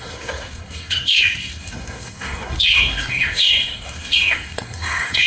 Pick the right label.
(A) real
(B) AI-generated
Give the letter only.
B